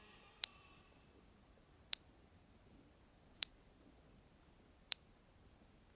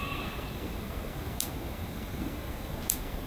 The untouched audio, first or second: first